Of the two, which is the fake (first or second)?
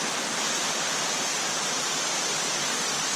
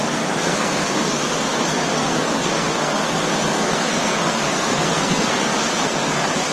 second